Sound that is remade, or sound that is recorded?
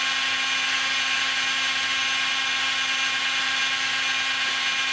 recorded